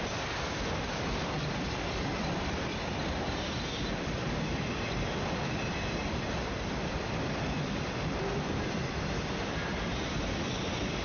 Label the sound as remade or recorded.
remade